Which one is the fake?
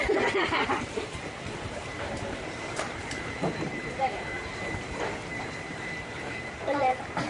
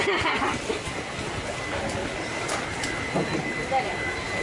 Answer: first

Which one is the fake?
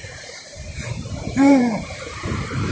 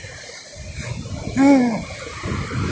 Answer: first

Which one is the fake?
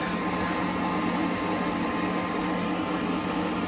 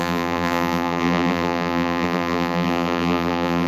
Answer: second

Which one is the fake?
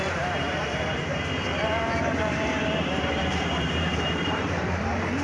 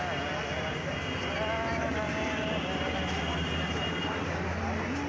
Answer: first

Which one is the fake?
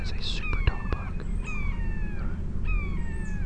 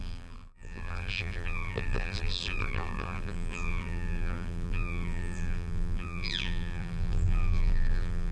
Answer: second